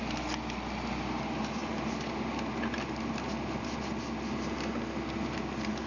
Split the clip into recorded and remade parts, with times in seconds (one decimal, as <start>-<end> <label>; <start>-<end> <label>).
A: 0.0-5.9 recorded